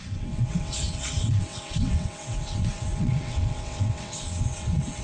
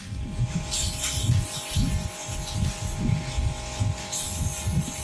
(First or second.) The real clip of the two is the second